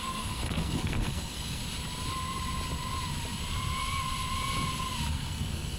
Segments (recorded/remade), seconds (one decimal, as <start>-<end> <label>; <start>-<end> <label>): 0.0-1.6 remade; 1.6-5.1 recorded; 5.1-5.8 remade